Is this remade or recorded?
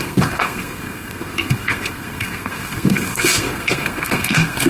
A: remade